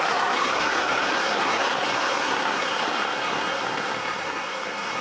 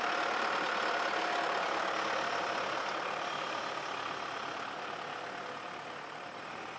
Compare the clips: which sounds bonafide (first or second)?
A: second